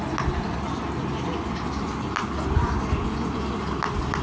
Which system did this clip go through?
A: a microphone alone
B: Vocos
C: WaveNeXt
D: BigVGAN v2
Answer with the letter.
A